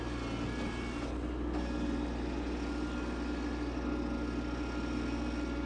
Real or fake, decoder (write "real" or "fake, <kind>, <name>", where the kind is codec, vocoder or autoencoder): real